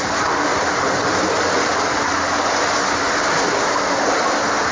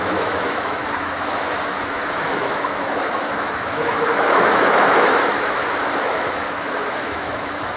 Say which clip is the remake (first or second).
second